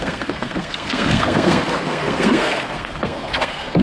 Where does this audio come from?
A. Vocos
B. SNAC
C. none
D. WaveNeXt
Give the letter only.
B